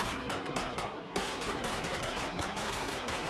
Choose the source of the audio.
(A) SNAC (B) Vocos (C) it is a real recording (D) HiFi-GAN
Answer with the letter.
A